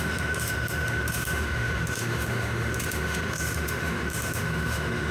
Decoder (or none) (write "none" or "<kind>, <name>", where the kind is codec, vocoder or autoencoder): autoencoder, DAC-VAE